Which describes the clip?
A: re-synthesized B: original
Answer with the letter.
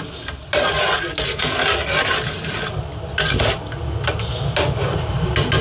B